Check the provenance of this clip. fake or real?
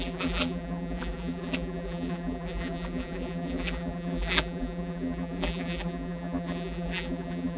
fake